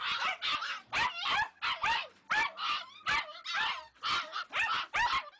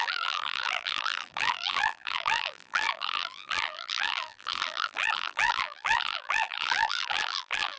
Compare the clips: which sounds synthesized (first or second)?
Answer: second